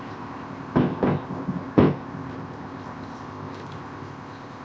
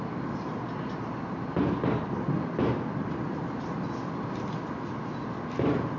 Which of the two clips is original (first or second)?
second